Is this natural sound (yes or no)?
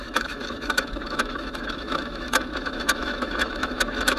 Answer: no